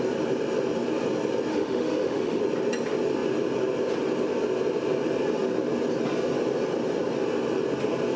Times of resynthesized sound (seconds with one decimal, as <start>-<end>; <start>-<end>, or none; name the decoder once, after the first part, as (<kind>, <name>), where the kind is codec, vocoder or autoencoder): 1.5-2.4 (autoencoder, DAC-VAE)